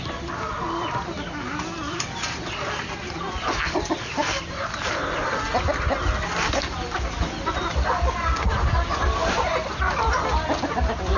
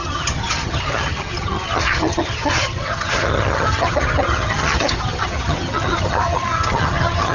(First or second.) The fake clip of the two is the second